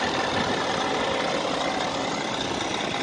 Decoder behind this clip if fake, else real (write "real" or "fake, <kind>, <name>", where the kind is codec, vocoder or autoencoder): real